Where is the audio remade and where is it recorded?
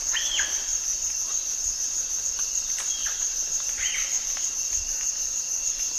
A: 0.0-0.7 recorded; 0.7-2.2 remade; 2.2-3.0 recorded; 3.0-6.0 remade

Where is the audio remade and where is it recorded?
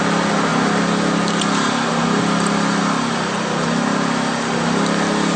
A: 0.0-5.4 recorded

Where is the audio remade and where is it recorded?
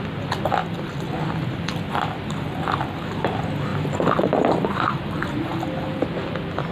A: 0.0-6.7 recorded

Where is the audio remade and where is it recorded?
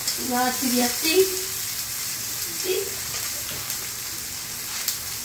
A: 0.0-0.6 recorded; 0.6-3.7 remade; 3.7-5.2 recorded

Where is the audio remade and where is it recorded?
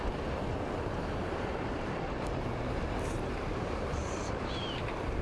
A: 0.0-1.2 recorded; 1.2-4.3 remade; 4.3-5.2 recorded